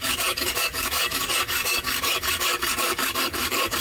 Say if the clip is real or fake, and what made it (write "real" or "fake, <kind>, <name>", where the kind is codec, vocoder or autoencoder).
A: fake, codec, DAC